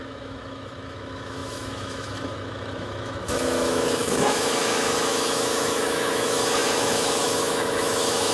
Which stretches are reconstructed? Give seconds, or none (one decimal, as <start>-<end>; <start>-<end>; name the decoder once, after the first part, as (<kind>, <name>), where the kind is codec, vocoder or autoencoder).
0.0-8.3 (autoencoder, DAC-VAE)